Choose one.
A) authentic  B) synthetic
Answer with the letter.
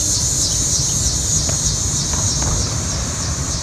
A